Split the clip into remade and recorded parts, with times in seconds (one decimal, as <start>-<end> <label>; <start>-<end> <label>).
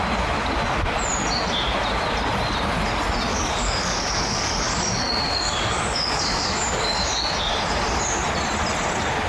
0.0-3.3 recorded; 3.3-7.1 remade; 7.1-9.3 recorded